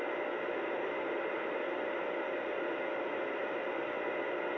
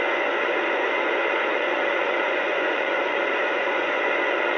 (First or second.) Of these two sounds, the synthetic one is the second